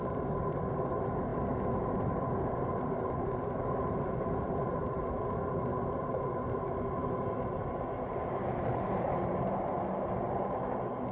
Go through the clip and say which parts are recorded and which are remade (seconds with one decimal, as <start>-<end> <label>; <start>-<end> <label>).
0.0-11.1 recorded